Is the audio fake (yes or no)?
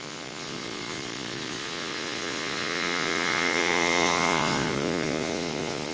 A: yes